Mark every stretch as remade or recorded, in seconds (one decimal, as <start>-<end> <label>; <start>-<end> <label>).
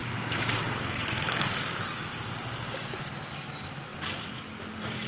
0.0-3.1 remade; 3.1-5.1 recorded